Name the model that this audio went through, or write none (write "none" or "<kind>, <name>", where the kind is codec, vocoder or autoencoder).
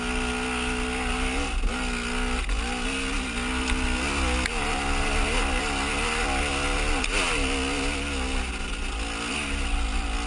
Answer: none